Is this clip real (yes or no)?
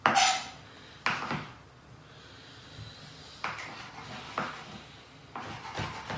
yes